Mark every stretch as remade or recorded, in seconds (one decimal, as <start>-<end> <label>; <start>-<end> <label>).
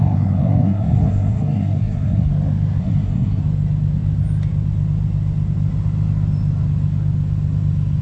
0.0-2.3 remade; 2.3-2.8 recorded; 2.8-3.4 remade; 3.4-8.0 recorded